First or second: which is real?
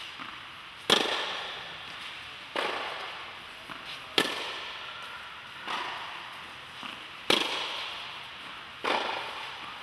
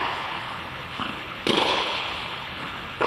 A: first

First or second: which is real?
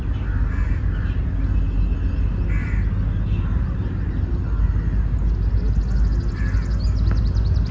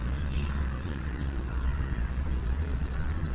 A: first